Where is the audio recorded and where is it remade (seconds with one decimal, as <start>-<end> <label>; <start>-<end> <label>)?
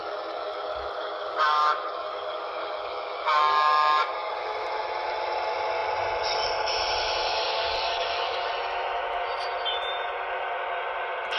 0.0-4.3 remade; 4.3-7.3 recorded; 7.3-8.5 remade; 8.5-11.4 recorded